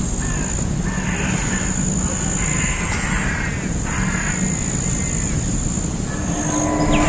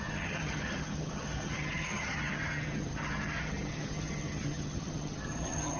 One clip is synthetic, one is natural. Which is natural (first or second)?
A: first